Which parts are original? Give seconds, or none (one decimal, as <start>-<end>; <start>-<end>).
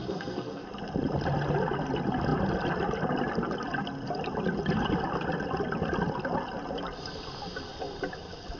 0.7-8.6